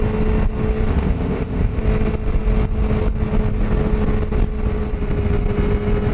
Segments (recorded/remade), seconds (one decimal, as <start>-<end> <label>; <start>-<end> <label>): 0.0-0.9 recorded; 0.9-1.8 remade; 1.8-6.1 recorded